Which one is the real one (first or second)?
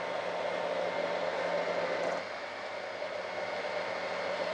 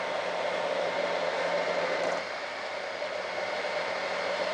first